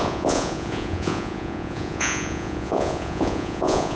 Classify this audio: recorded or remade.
remade